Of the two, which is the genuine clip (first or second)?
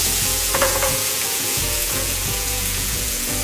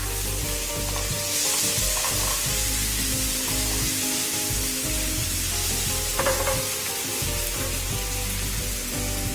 second